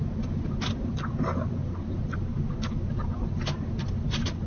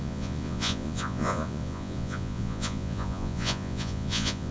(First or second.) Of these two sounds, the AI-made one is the second